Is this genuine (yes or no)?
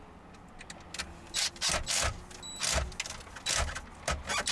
yes